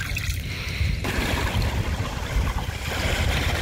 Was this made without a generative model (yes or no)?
no